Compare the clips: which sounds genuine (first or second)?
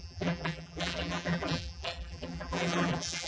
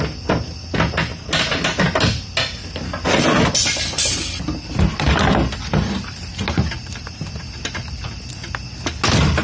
second